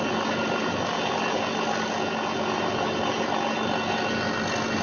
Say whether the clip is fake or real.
real